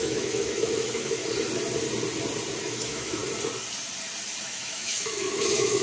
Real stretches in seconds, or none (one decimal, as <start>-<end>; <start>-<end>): 1.2-2.6; 3.2-4.4